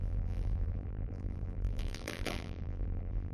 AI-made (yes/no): yes